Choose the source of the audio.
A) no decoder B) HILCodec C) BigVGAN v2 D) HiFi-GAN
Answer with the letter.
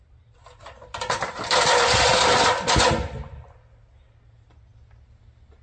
A